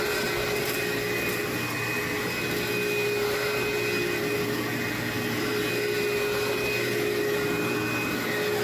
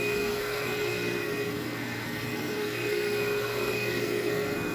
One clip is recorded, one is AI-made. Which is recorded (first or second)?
first